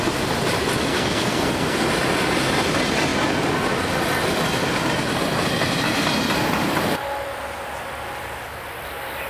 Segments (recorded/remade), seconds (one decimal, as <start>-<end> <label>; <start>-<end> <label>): 0.0-0.9 recorded; 0.9-1.9 remade; 1.9-9.3 recorded